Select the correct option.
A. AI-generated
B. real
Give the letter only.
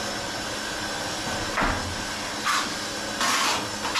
B